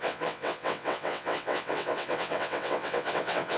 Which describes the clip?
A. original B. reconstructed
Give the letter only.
B